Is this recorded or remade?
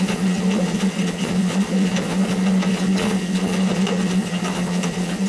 remade